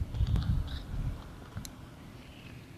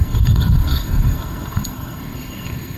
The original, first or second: first